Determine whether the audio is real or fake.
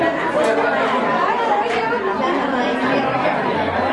real